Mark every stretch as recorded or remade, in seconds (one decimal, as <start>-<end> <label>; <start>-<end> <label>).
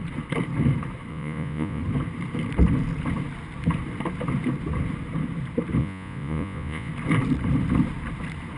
0.0-1.1 recorded; 1.1-1.8 remade; 1.8-5.8 recorded; 5.8-6.9 remade; 6.9-8.6 recorded